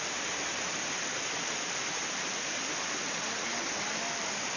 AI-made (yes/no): no